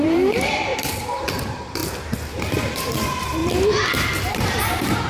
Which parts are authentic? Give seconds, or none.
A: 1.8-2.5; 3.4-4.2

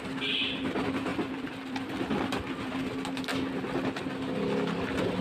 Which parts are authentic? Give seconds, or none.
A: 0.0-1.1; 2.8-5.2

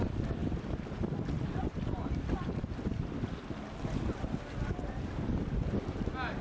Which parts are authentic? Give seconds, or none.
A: 0.0-6.4

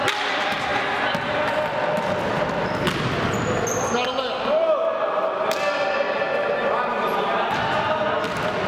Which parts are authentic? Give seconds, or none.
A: 0.0-8.7

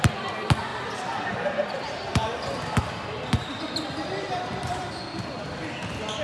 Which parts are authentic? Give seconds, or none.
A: 0.7-1.3

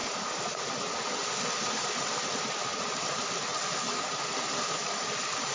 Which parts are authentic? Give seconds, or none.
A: 0.0-5.5

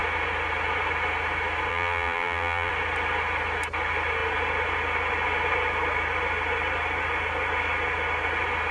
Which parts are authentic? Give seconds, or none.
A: 0.0-1.7; 2.7-8.7

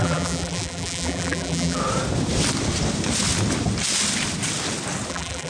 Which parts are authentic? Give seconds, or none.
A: 1.8-5.1